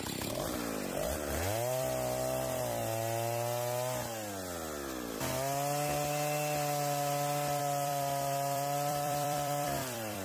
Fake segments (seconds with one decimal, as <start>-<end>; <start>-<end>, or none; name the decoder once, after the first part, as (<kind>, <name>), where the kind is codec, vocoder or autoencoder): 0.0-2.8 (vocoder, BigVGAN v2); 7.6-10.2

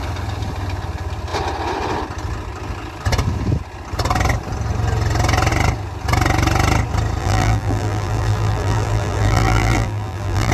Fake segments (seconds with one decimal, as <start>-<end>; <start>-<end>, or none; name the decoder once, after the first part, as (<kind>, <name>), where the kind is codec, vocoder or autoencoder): 7.2-10.5 (vocoder, BigVGAN v2)

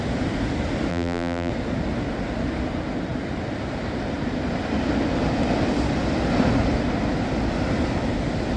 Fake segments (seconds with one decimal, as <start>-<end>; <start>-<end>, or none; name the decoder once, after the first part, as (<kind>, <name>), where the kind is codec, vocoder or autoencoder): 0.9-1.5 (vocoder, BigVGAN v2)